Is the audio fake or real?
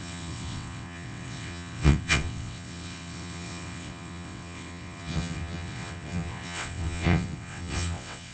fake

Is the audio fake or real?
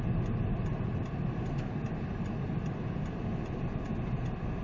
real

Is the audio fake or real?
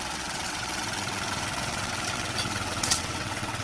fake